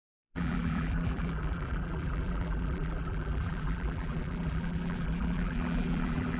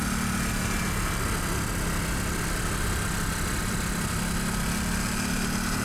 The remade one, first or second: first